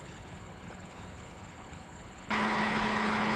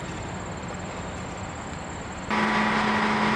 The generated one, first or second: first